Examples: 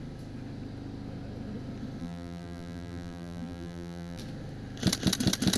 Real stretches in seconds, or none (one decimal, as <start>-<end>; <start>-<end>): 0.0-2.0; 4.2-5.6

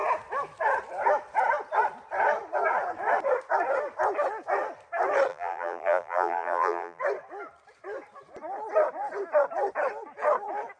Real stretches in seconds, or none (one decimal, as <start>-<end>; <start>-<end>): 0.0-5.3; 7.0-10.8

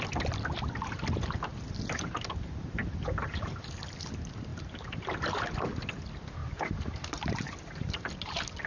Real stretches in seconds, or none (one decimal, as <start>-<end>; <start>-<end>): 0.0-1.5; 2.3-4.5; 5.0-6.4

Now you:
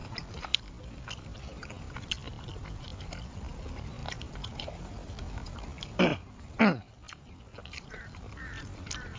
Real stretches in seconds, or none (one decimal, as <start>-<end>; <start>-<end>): 0.0-4.0; 6.6-7.5; 8.3-9.2

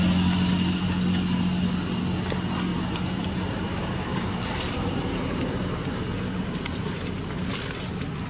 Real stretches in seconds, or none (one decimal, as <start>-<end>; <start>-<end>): 0.0-2.7; 7.0-8.3

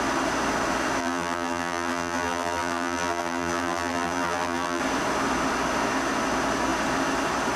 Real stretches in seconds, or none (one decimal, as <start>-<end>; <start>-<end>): 0.0-1.0; 4.8-7.6

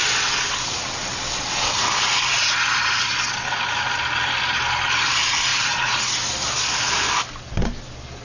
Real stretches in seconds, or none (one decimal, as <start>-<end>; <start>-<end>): 0.0-5.5; 6.0-8.2

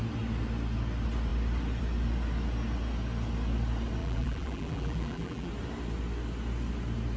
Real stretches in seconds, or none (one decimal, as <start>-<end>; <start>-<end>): 0.0-4.0; 5.5-7.2